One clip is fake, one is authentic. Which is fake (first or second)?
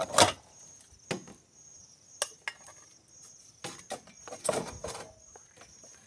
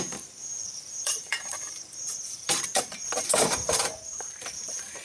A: second